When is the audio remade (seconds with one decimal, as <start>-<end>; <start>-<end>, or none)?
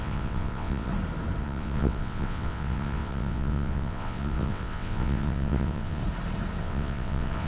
0.0-0.9; 1.4-6.0; 6.6-7.5